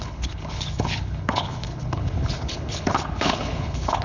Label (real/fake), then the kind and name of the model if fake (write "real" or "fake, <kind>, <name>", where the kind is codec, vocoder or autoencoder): fake, codec, HILCodec